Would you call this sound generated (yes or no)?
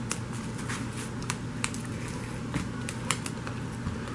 no